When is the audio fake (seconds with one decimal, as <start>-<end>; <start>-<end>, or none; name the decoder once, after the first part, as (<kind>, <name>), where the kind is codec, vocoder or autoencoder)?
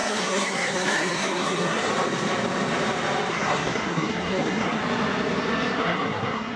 0.0-1.9 (codec, SNAC); 3.3-4.8; 5.8-6.6